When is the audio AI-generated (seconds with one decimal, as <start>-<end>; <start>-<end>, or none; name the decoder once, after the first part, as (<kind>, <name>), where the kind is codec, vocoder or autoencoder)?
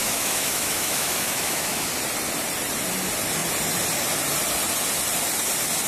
0.0-1.9 (autoencoder, DAC-VAE)